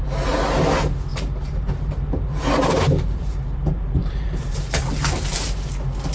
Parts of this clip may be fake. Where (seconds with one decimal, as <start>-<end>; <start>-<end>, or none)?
1.1-4.8